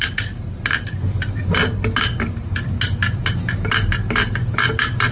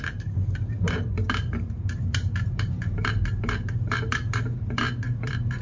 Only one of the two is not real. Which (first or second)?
second